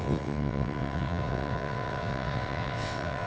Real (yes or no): no